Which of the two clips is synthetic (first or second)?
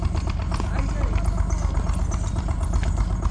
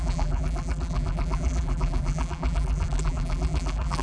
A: second